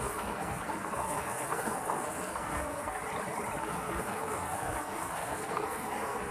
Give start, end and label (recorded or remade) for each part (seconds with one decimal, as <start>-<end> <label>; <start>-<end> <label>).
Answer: 0.0-3.0 remade; 3.0-3.6 recorded; 3.6-6.3 remade